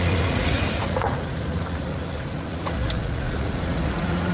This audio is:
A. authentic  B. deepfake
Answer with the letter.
B